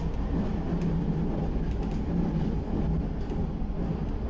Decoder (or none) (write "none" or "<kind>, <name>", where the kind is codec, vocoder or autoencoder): none